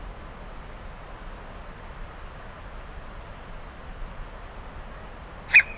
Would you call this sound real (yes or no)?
yes